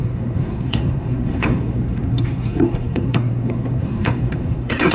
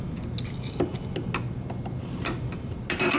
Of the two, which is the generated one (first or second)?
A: first